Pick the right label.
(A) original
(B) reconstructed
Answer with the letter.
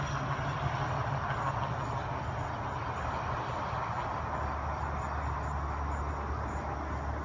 A